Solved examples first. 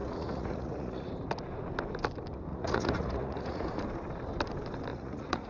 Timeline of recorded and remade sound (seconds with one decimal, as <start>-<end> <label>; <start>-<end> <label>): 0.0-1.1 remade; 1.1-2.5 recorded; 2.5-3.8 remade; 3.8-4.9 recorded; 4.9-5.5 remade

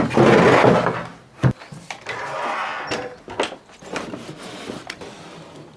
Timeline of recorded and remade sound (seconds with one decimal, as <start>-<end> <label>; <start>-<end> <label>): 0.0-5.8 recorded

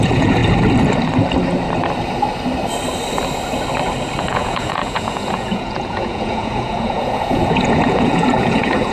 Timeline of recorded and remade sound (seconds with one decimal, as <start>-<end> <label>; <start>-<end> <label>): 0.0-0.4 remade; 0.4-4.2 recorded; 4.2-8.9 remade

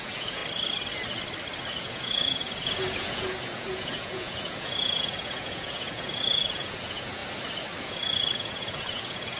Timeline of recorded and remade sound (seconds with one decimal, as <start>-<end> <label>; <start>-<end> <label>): 0.0-0.4 remade; 0.4-1.7 recorded; 1.7-7.2 remade; 7.2-7.8 recorded; 7.8-9.4 remade

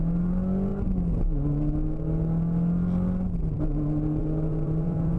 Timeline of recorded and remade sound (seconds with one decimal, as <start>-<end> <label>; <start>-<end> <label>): 0.0-4.2 recorded; 4.2-5.2 remade